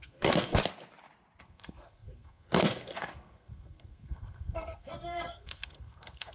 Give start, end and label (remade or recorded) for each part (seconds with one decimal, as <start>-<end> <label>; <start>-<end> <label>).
0.0-0.6 remade; 0.6-1.4 recorded; 1.4-6.3 remade